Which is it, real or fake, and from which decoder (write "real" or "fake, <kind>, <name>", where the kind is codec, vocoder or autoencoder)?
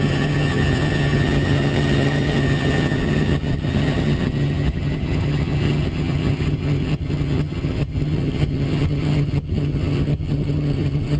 fake, vocoder, HiFi-GAN